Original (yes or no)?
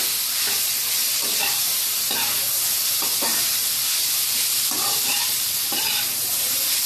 yes